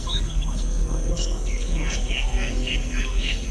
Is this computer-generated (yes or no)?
yes